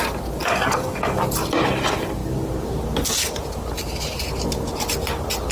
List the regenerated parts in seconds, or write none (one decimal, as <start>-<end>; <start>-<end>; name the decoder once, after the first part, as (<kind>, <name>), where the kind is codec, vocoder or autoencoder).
0.4-1.2 (codec, DAC)